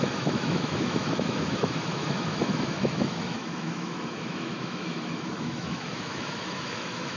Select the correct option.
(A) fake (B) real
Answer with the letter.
A